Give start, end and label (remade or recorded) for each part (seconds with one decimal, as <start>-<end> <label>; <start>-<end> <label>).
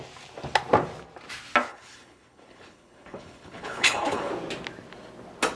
0.0-1.7 recorded; 1.7-4.3 remade; 4.3-5.6 recorded